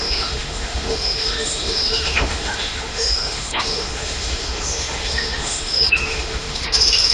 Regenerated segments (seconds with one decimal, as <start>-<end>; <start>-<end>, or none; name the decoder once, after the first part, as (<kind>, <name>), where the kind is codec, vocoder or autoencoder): 0.0-7.1 (autoencoder, DAC-VAE)